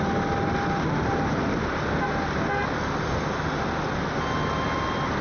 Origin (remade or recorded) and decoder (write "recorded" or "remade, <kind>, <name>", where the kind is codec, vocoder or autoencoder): recorded